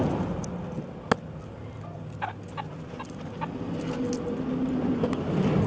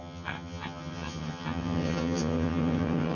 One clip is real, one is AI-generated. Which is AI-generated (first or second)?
second